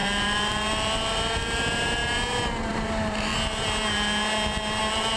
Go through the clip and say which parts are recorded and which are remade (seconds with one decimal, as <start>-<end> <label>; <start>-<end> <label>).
0.0-2.0 remade; 2.0-2.7 recorded; 2.7-3.3 remade; 3.3-4.8 recorded; 4.8-5.2 remade